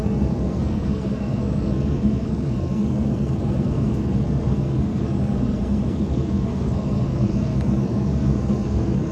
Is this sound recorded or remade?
remade